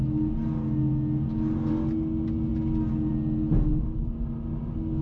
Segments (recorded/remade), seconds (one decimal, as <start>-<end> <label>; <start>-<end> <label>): 0.0-5.0 recorded